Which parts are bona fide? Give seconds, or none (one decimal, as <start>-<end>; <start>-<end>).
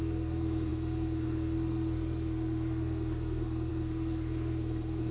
none